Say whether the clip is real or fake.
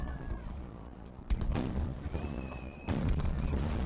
fake